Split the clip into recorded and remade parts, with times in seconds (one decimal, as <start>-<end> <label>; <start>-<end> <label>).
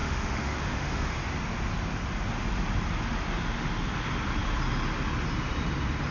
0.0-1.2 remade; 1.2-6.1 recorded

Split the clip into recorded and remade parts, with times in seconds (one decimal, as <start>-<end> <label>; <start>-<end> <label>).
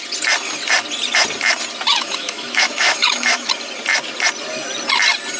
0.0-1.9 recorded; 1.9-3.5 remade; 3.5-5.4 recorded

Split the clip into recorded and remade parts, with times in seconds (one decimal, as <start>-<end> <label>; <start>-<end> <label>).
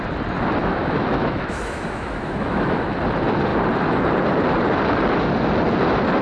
0.0-0.6 recorded; 0.6-3.0 remade; 3.0-6.2 recorded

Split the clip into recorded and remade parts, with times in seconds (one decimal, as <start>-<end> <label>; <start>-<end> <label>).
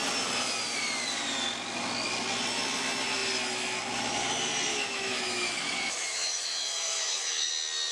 0.0-4.7 recorded; 4.7-7.5 remade; 7.5-7.9 recorded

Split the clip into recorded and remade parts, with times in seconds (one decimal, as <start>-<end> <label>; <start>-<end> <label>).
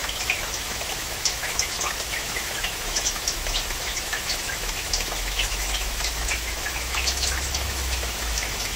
0.0-8.8 remade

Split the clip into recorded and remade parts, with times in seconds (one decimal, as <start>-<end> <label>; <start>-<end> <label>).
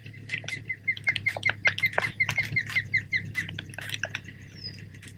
0.0-5.2 recorded